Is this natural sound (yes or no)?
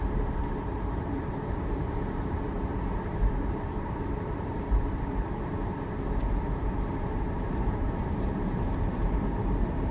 no